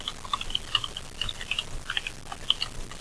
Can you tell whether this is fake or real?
real